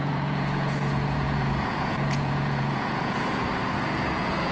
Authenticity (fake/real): fake